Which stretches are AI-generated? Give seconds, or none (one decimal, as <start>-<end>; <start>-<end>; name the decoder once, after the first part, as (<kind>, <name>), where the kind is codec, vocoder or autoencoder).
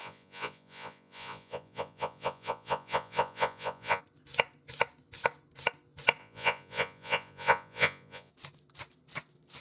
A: 0.0-4.0 (vocoder, Vocos); 6.2-8.3